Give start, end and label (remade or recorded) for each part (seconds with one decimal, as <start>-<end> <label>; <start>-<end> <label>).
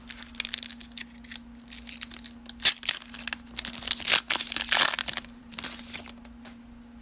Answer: 0.0-5.0 recorded; 5.0-5.8 remade; 5.8-7.0 recorded